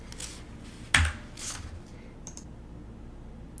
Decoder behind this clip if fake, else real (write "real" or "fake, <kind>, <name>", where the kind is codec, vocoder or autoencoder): real